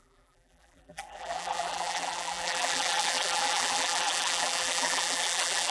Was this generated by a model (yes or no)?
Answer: yes